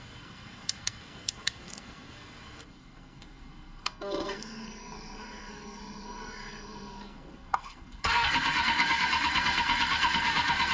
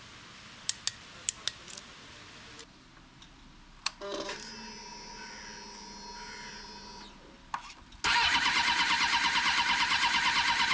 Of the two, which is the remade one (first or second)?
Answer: first